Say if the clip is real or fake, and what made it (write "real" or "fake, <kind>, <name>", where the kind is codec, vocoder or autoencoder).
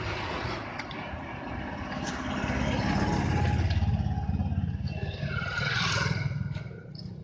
real